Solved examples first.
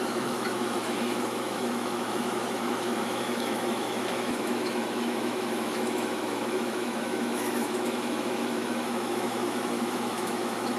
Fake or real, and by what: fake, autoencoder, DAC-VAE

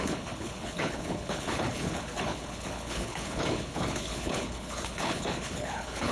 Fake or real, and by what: fake, codec, HILCodec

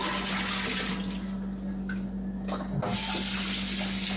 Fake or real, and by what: real